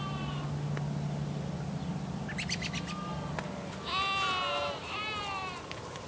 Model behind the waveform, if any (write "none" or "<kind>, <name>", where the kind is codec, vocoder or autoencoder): none